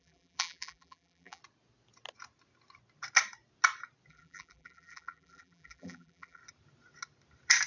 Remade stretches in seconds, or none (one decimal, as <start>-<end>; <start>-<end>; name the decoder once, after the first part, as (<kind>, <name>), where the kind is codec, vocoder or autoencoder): 0.0-1.4 (vocoder, BigVGAN v2); 4.1-6.4